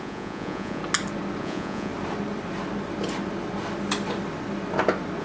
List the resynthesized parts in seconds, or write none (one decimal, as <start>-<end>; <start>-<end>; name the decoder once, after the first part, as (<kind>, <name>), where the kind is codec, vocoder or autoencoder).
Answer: 0.0-0.8 (vocoder, Vocos); 1.4-1.9